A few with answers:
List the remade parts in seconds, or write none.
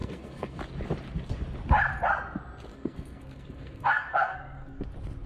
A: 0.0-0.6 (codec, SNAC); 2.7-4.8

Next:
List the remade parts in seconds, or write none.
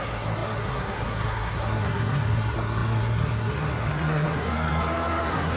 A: 0.0-5.6 (codec, SNAC)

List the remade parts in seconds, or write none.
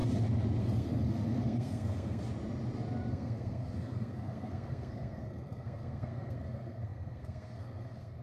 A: 0.6-2.2 (codec, SNAC); 3.1-8.2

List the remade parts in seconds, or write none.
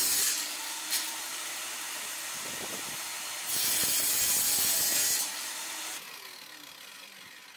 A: none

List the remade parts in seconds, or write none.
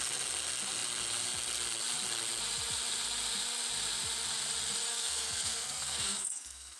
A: 4.9-6.8 (codec, SNAC)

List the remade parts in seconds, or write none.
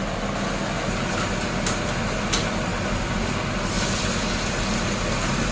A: none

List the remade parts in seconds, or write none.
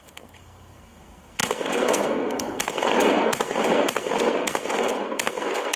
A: 0.0-5.8 (codec, SNAC)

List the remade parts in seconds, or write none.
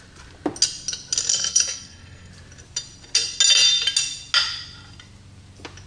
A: 1.3-2.3 (codec, SNAC)